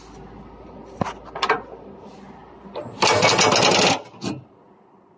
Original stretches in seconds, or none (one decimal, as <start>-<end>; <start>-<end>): 0.0-5.2